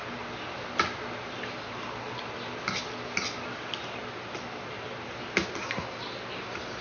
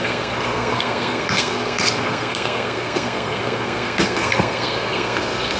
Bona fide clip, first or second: first